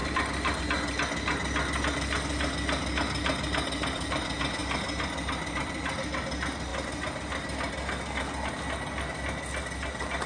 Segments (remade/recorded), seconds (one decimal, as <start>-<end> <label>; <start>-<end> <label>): 0.0-0.6 remade; 0.6-10.3 recorded